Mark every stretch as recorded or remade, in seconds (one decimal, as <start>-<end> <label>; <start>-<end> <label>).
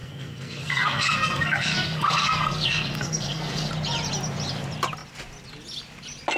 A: 0.0-3.7 remade; 3.7-6.4 recorded